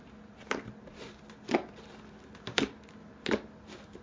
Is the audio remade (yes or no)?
no